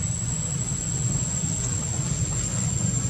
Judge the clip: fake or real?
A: fake